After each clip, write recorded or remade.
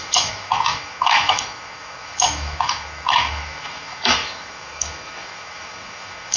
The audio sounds remade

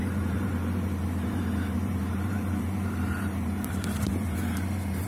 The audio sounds remade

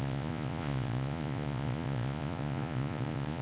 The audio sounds remade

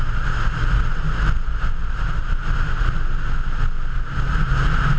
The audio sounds recorded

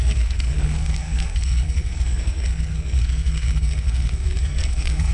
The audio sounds remade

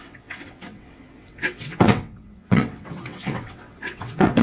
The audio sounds remade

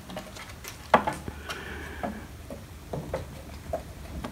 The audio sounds recorded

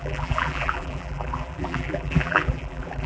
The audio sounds remade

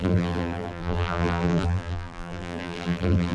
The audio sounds remade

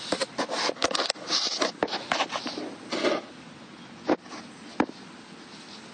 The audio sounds recorded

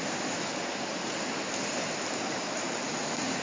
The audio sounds remade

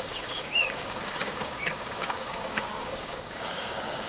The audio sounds remade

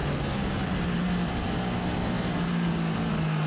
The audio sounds recorded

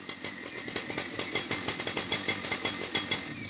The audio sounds recorded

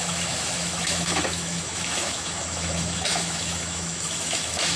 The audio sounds remade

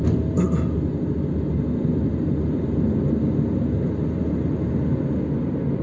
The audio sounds recorded